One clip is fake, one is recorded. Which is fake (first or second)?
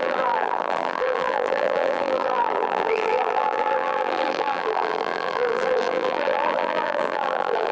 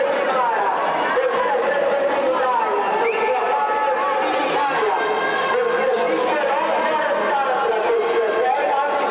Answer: first